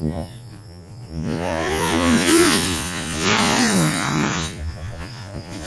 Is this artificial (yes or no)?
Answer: yes